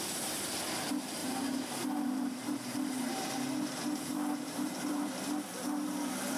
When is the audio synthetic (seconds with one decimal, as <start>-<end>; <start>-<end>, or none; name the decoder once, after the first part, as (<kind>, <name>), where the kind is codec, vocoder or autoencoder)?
1.2-5.0 (vocoder, BigVGAN v2)